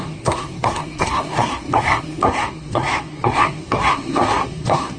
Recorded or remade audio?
remade